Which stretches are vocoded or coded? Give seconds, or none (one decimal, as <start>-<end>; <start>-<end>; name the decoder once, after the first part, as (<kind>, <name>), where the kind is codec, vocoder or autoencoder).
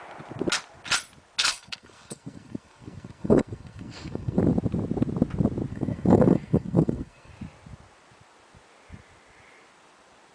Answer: 1.4-4.4 (codec, SNAC); 5.7-7.3